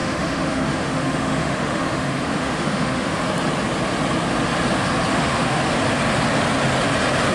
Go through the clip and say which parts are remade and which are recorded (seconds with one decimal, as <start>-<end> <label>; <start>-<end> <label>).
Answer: 0.0-3.2 remade; 3.2-5.1 recorded; 5.1-5.6 remade; 5.6-7.3 recorded